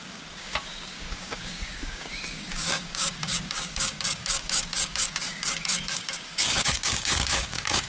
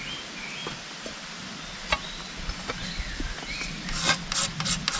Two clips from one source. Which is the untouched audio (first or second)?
second